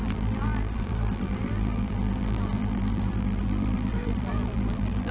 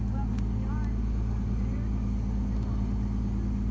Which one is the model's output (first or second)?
first